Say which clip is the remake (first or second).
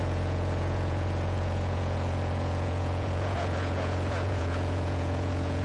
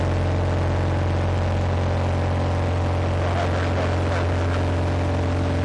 first